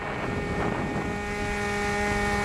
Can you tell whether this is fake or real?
real